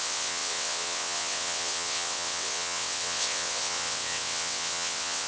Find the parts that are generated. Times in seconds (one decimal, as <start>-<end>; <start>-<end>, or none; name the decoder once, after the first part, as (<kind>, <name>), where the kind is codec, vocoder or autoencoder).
0.0-5.3 (vocoder, WaveNeXt)